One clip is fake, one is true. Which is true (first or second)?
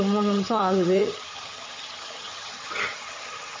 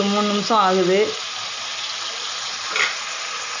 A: second